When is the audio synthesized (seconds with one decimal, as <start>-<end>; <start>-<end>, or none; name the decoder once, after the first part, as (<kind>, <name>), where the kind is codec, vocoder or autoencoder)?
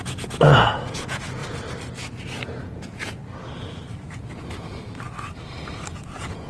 0.0-1.4 (vocoder, Vocos); 2.0-3.2; 5.9-6.5